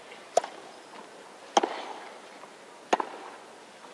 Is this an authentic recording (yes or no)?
yes